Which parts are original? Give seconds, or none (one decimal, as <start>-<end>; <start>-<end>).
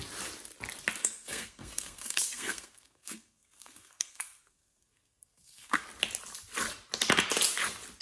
0.0-1.0; 5.8-8.0